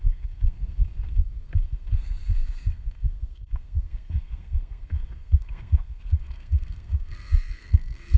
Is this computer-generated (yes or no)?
yes